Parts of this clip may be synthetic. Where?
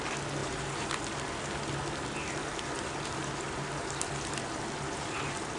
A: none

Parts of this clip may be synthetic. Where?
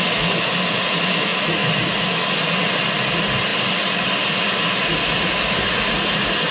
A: none